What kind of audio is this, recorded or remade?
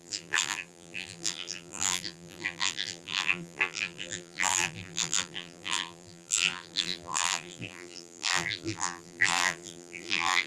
remade